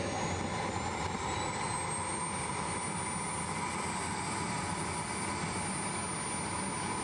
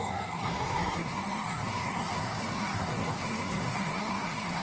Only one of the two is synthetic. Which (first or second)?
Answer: second